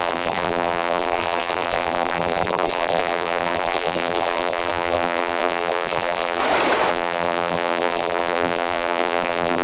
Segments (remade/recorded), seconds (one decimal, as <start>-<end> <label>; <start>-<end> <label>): 0.0-6.4 remade; 6.4-6.9 recorded; 6.9-9.6 remade